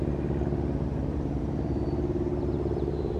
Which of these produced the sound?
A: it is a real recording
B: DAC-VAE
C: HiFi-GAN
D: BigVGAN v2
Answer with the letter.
A